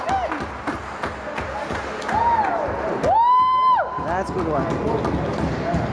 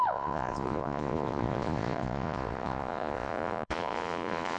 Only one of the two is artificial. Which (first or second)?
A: second